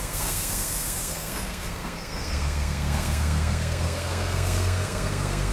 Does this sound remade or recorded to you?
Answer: remade